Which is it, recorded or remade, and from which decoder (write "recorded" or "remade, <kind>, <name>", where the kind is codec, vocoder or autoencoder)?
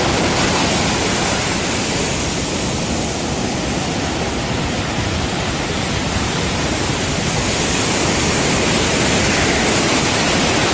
recorded